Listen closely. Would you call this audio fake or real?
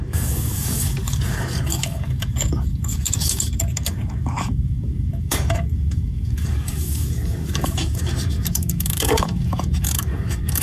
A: fake